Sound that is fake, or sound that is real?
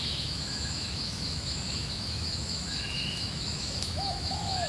fake